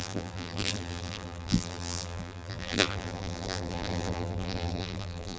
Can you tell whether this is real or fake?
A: fake